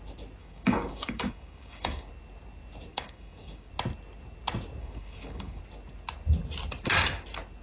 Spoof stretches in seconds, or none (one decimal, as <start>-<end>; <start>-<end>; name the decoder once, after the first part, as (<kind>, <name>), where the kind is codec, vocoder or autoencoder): 0.4-2.1 (codec, DAC); 2.9-3.7; 4.8-5.6